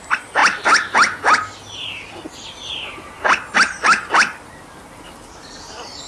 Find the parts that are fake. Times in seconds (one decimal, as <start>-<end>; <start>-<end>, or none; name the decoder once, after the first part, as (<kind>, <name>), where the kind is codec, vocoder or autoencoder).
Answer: none